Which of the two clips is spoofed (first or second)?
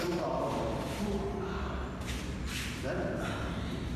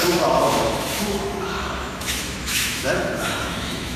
second